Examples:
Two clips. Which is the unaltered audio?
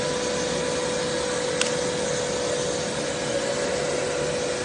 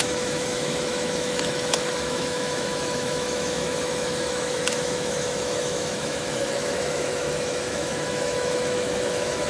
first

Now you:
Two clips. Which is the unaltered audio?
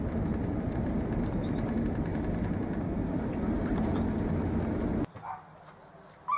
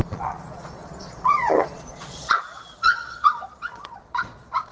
first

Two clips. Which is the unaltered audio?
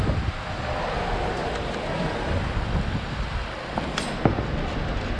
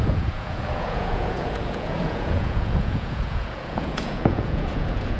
first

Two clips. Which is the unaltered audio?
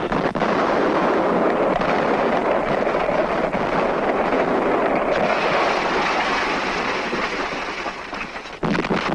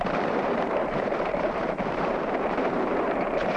first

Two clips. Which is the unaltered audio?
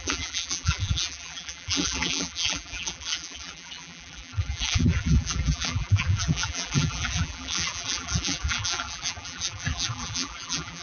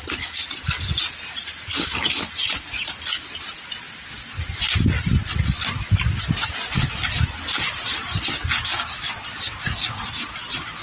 second